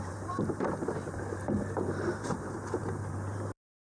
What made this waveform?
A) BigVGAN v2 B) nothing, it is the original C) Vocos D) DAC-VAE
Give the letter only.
A